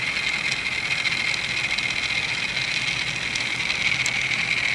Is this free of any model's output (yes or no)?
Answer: yes